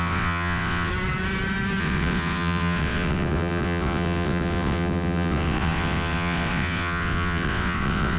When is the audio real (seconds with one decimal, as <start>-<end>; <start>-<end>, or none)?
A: 0.9-1.8